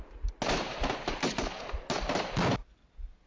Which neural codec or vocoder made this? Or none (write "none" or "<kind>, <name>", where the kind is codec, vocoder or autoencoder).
none